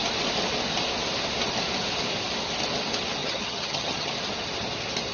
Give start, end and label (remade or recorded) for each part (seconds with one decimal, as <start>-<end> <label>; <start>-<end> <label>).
0.0-3.2 recorded; 3.2-4.1 remade; 4.1-5.1 recorded